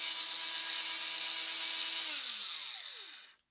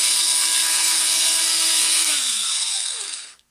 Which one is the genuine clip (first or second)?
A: first